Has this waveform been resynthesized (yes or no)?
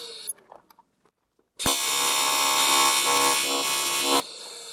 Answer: no